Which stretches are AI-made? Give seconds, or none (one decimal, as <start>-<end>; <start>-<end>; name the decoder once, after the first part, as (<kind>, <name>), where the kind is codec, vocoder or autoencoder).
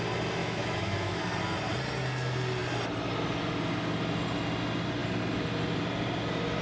0.4-1.2 (autoencoder, DAC-VAE)